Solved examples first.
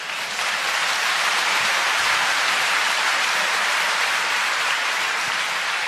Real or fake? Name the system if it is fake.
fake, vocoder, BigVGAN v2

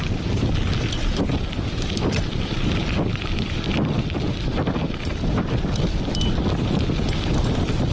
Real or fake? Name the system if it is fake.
real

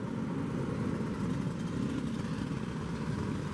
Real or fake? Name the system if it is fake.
real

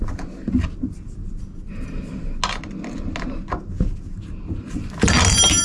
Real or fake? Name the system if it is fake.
real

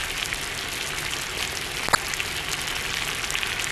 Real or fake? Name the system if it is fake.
real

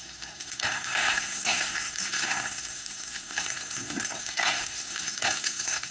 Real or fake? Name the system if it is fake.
fake, codec, SNAC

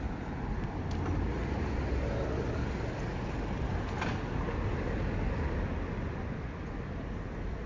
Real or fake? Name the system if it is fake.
real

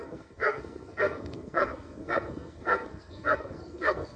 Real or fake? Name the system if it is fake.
fake, codec, SNAC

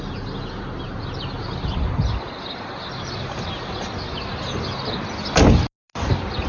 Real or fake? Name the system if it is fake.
real